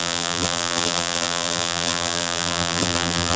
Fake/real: fake